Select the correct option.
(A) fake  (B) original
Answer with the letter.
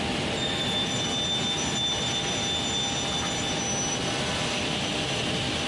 B